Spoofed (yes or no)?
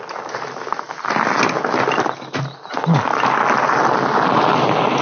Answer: no